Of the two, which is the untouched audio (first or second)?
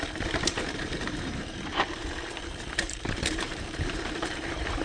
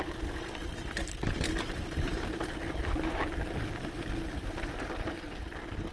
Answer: second